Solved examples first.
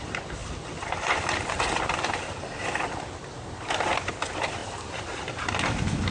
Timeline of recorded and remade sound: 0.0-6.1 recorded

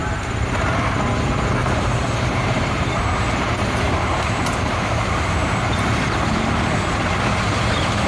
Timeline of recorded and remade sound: 0.0-1.6 recorded; 1.6-6.4 remade; 6.4-8.1 recorded

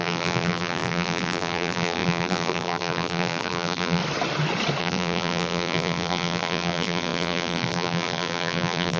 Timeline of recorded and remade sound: 0.0-4.0 remade; 4.0-4.8 recorded; 4.8-9.0 remade

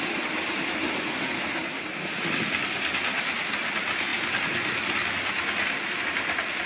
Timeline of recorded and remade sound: 0.0-6.7 recorded

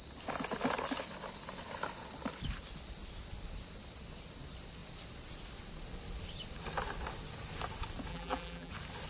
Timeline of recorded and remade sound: 0.0-8.1 recorded; 8.1-8.7 remade; 8.7-9.1 recorded

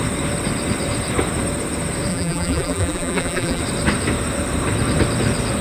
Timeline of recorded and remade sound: 0.0-2.1 recorded; 2.1-3.6 remade; 3.6-5.6 recorded

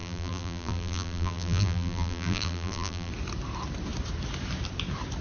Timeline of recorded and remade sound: 0.0-3.1 remade; 3.1-5.2 recorded

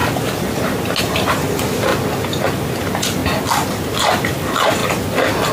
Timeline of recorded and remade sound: 0.0-1.0 recorded; 1.0-1.9 remade; 1.9-2.7 recorded; 2.7-3.2 remade; 3.2-3.8 recorded; 3.8-4.8 remade; 4.8-5.5 recorded